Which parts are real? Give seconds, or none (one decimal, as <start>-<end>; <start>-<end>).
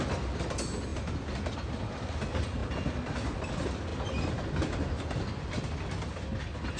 0.0-6.8